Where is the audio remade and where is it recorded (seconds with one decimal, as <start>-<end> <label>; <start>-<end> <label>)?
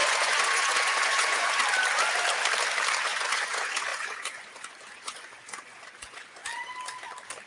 0.0-1.6 remade; 1.6-3.0 recorded; 3.0-6.4 remade; 6.4-7.5 recorded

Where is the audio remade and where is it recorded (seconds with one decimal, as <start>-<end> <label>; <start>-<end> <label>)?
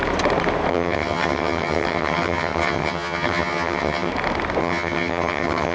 0.0-0.7 recorded; 0.7-4.1 remade; 4.1-4.6 recorded; 4.6-5.7 remade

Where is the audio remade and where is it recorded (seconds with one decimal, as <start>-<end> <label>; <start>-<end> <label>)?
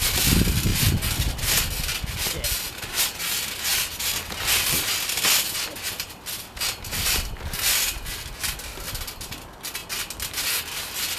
0.0-11.2 recorded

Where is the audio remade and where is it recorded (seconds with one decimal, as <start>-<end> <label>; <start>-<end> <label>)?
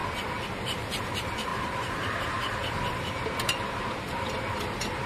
0.0-0.6 recorded; 0.6-5.1 remade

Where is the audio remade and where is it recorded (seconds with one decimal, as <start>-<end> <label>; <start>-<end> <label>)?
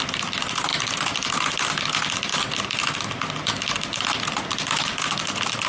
0.0-0.7 remade; 0.7-4.1 recorded; 4.1-5.7 remade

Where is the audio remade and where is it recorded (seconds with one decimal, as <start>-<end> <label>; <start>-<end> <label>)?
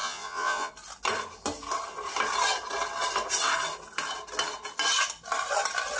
0.0-0.7 remade; 0.7-6.0 recorded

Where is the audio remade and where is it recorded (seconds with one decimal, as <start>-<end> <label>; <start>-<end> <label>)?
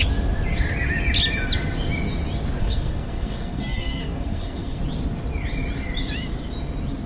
0.0-2.6 recorded; 2.6-4.8 remade; 4.8-7.1 recorded